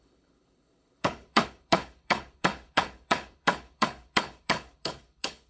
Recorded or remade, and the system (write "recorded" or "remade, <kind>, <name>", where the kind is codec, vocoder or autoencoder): remade, codec, HILCodec